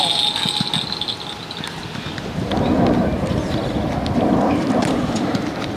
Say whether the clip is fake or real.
real